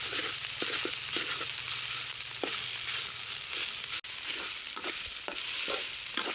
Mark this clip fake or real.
real